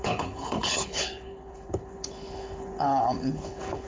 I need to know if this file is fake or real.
fake